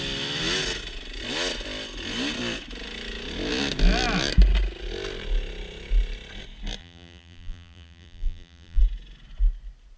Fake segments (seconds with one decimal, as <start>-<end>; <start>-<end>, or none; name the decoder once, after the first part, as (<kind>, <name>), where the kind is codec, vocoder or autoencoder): 6.8-8.8 (vocoder, BigVGAN v2)